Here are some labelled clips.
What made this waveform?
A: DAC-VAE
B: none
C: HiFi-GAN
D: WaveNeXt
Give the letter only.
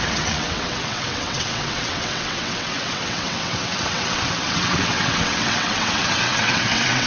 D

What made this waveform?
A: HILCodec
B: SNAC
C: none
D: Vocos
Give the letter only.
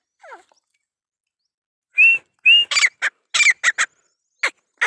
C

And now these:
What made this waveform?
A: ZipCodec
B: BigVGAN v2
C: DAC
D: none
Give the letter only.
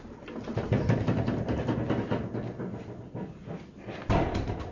D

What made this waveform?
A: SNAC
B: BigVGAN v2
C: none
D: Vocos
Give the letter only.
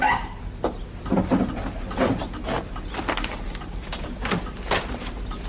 C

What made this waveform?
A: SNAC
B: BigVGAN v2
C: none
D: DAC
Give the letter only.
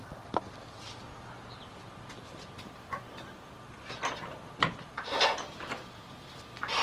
C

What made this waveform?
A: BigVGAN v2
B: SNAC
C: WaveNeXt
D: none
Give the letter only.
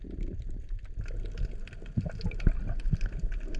D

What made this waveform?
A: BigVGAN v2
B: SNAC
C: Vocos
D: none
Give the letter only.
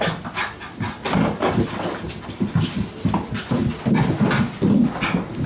D